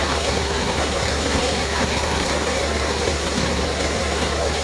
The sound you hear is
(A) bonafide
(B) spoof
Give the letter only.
B